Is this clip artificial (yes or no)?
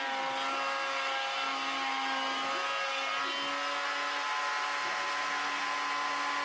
no